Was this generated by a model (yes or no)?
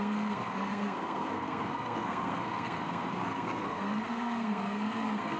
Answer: yes